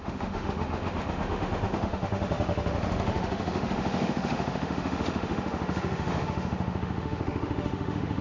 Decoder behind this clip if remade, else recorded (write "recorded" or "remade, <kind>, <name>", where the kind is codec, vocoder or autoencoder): remade, autoencoder, DAC-VAE